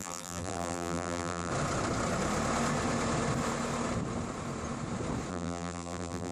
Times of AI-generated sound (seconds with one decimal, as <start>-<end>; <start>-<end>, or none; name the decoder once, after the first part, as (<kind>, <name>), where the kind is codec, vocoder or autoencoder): 0.0-1.5 (vocoder, BigVGAN v2); 5.3-6.3